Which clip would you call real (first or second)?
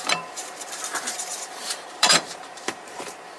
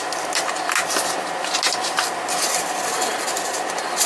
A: second